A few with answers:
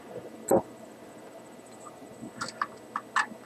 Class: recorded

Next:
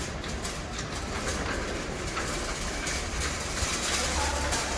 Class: remade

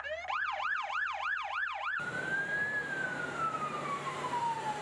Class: remade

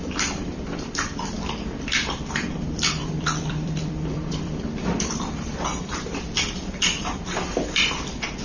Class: remade